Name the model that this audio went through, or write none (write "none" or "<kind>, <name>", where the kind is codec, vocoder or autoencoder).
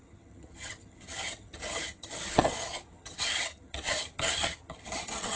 vocoder, HiFi-GAN